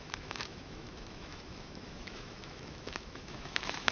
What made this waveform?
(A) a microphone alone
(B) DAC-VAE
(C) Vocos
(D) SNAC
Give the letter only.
B